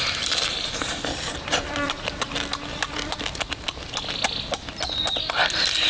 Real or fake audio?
real